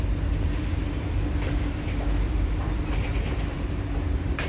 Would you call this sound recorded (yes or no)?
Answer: no